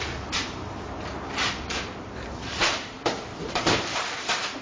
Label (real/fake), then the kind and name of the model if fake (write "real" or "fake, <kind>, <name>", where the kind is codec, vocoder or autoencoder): fake, vocoder, BigVGAN v2